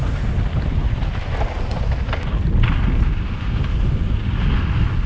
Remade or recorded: recorded